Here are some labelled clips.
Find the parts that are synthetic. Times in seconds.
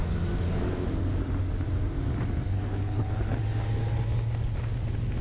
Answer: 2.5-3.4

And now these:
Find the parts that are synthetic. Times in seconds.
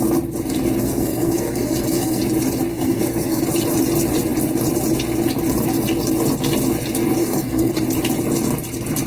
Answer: 0.8-2.2; 2.7-3.4; 7.2-7.7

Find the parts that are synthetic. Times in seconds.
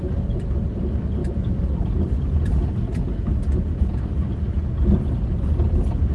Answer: none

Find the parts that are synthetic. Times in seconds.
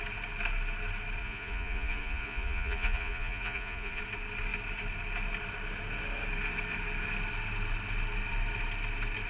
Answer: 1.2-4.0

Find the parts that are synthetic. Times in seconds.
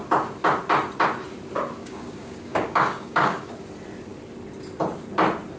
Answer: 1.8-3.5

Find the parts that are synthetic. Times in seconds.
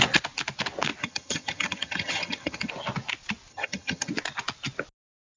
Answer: 1.0-2.7; 3.5-4.1